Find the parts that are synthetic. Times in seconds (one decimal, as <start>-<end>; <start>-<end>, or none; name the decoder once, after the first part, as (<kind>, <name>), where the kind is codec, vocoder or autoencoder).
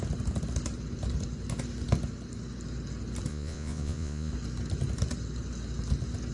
3.3-4.3 (vocoder, Vocos)